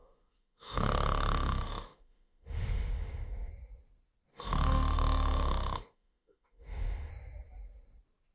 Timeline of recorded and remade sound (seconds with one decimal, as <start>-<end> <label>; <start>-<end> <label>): 0.0-3.5 remade; 3.5-4.3 recorded; 4.3-7.1 remade; 7.1-8.3 recorded